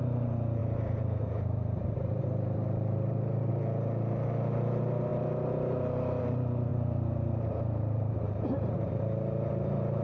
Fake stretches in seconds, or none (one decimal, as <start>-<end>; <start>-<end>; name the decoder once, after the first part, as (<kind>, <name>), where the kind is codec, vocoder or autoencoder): 0.6-3.5 (vocoder, BigVGAN v2); 6.7-8.9